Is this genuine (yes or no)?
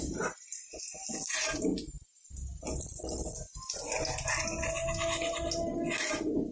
yes